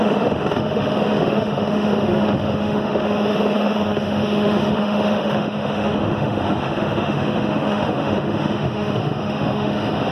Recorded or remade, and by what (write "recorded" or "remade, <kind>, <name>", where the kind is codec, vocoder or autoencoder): remade, autoencoder, DAC-VAE